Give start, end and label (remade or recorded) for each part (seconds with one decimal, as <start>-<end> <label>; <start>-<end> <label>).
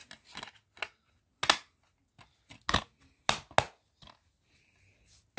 0.0-5.4 recorded